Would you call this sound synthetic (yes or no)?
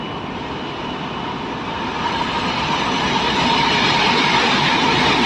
yes